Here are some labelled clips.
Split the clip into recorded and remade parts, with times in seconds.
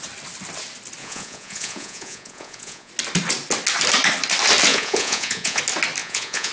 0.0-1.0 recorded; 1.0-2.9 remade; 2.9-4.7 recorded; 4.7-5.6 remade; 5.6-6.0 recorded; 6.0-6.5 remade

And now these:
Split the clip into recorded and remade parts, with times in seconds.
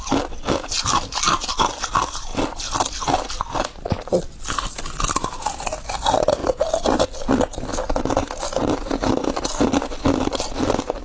0.0-11.0 recorded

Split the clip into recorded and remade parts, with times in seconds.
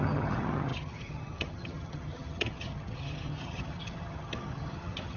0.0-5.2 remade